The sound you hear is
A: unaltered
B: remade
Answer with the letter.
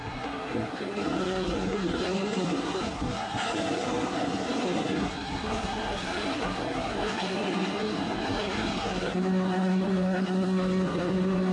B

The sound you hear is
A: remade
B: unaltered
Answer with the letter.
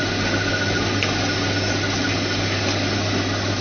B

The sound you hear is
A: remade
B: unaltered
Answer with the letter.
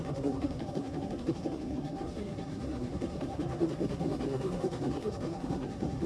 A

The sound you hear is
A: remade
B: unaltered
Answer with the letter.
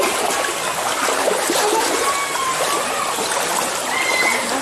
B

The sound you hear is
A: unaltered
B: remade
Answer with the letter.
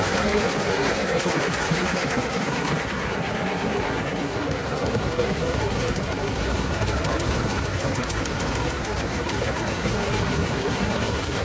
B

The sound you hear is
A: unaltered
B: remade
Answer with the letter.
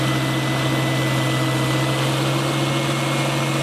A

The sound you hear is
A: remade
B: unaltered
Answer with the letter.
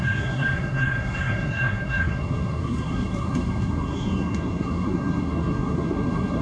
A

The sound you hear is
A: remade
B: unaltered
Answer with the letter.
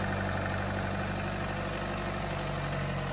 B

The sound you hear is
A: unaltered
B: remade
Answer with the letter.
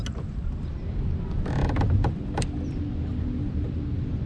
A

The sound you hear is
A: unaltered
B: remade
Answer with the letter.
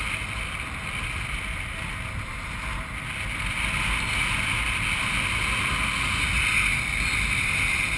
A